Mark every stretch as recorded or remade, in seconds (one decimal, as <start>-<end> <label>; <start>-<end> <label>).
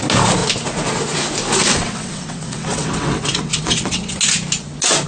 0.0-1.7 recorded; 1.7-4.2 remade; 4.2-5.1 recorded